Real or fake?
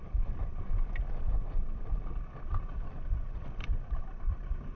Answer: fake